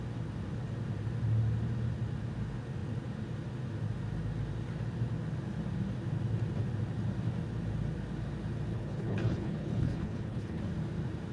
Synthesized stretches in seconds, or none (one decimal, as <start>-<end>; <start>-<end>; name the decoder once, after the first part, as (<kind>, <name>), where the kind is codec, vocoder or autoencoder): 8.7-10.6 (codec, HILCodec)